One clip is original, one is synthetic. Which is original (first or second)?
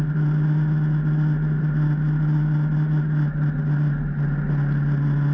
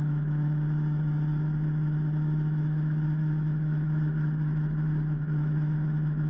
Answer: first